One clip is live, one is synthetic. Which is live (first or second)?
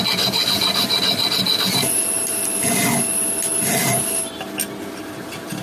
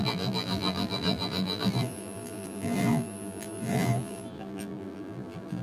first